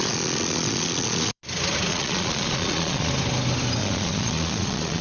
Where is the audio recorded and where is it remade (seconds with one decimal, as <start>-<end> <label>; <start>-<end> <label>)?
0.0-1.4 remade; 1.4-1.9 recorded; 1.9-3.1 remade; 3.1-3.8 recorded; 3.8-5.0 remade